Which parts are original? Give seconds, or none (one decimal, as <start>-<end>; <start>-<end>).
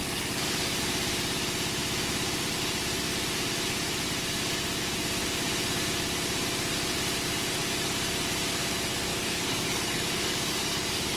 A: 0.8-9.1